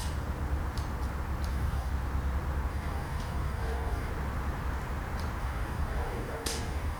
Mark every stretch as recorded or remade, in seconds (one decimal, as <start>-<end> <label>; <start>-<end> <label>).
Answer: 0.0-1.5 recorded; 1.5-1.9 remade; 1.9-2.7 recorded; 2.7-4.1 remade; 4.1-5.4 recorded; 5.4-7.0 remade